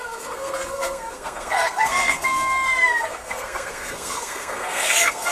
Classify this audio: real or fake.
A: fake